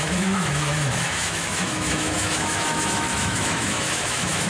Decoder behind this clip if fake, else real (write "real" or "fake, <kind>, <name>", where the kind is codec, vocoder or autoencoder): fake, autoencoder, DAC-VAE